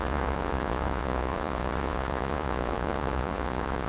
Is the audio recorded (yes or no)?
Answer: no